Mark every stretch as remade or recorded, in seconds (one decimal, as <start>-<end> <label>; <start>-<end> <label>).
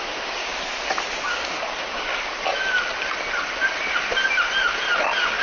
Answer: 0.0-0.5 remade; 0.5-1.3 recorded; 1.3-2.1 remade; 2.1-5.4 recorded